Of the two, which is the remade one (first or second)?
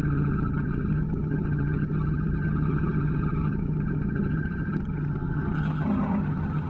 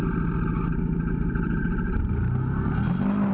first